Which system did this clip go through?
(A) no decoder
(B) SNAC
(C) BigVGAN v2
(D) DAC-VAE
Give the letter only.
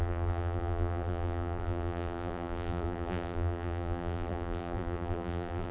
C